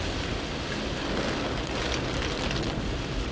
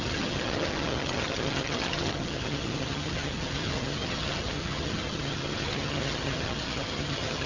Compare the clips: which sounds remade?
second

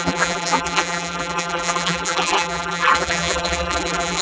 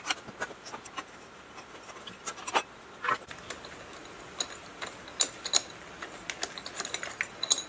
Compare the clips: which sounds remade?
first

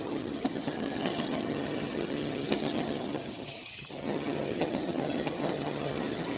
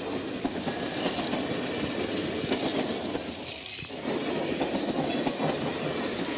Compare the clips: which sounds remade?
first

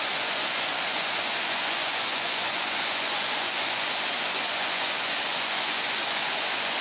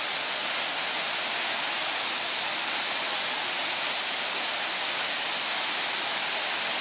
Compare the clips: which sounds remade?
first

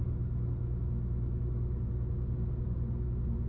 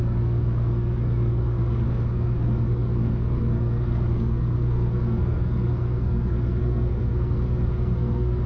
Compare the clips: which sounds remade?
second